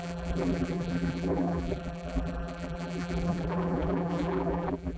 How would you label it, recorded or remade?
remade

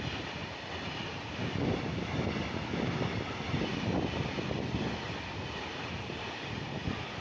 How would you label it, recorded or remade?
recorded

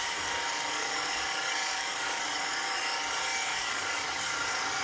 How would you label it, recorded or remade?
remade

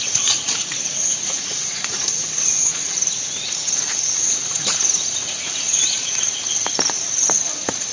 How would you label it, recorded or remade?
remade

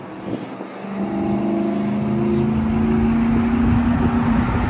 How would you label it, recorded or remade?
recorded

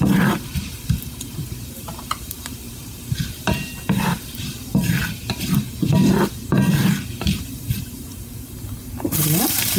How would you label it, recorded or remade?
remade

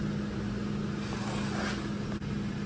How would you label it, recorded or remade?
recorded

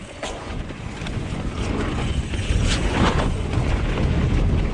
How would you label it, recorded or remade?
remade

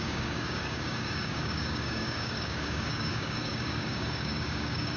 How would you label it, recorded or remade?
remade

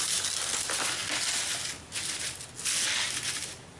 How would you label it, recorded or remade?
recorded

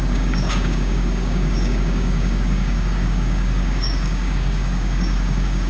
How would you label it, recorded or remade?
remade